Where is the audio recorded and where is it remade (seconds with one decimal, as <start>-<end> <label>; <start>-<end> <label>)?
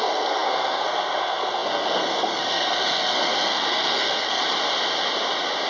0.0-4.4 remade; 4.4-5.7 recorded